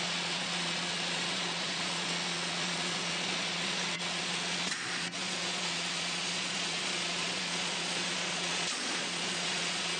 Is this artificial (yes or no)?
yes